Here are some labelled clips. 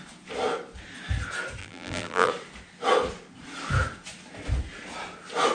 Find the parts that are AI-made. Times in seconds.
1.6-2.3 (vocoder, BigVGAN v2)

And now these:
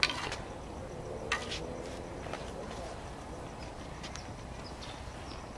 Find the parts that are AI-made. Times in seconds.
1.4-4.8 (vocoder, BigVGAN v2)